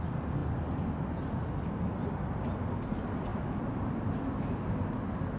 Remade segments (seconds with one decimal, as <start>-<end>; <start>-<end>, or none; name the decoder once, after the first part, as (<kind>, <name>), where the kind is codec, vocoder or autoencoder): none